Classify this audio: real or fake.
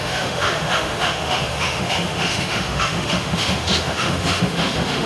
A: fake